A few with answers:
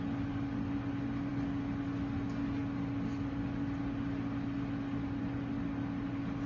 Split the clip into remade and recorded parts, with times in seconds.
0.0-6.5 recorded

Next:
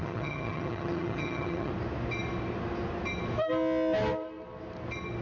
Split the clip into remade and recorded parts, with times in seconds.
0.0-1.7 remade; 1.7-5.2 recorded

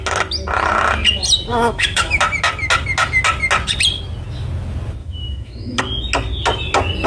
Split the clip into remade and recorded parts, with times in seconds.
0.0-1.5 recorded; 1.5-2.2 remade; 2.2-5.0 recorded; 5.0-5.8 remade; 5.8-7.1 recorded

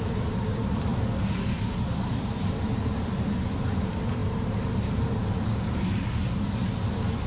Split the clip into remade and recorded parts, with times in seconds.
0.0-0.9 remade; 0.9-1.9 recorded; 1.9-7.3 remade